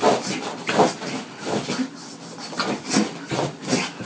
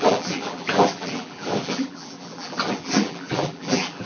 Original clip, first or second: first